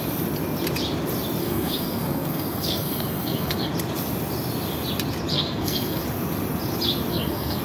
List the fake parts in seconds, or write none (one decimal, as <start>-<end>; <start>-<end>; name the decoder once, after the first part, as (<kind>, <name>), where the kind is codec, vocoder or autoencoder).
1.4-3.7 (codec, SNAC); 5.3-6.0; 7.1-7.6